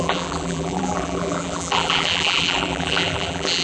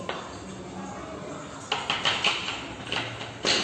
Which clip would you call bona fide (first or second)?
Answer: second